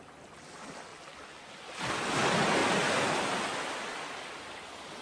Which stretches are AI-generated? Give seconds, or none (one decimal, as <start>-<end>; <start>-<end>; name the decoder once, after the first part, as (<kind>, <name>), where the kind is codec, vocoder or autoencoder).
none